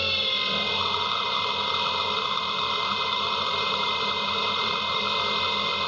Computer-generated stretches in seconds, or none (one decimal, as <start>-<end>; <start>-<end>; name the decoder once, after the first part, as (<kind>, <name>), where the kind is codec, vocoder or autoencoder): 2.9-5.0 (vocoder, BigVGAN v2)